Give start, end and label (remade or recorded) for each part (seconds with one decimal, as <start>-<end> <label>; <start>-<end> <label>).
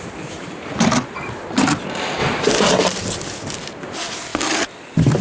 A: 0.0-5.2 recorded